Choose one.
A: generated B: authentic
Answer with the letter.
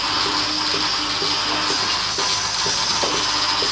B